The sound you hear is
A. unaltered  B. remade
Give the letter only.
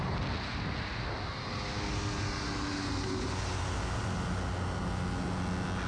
A